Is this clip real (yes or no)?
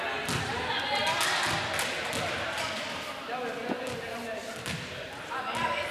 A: yes